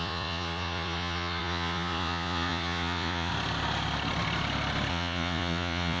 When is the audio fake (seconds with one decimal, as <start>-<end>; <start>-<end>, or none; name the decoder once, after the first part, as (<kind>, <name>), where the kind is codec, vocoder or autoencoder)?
0.0-3.3 (vocoder, Vocos); 4.9-6.0